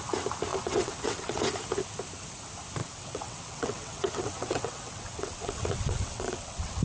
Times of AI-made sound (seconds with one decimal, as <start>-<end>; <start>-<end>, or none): 0.5-1.4; 2.8-6.8